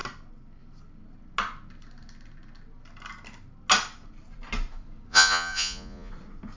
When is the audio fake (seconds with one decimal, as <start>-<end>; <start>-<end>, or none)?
5.1-6.1